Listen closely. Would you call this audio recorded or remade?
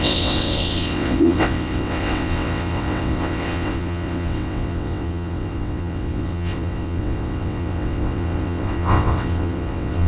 remade